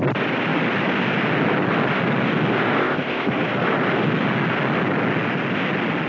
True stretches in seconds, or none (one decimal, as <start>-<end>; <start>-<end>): 0.0-2.8; 3.3-6.1